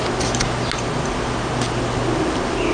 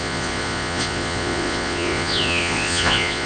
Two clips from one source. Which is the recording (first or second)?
first